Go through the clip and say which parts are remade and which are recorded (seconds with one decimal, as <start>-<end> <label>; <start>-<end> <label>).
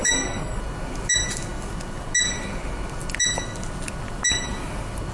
0.0-0.6 remade; 0.6-5.1 recorded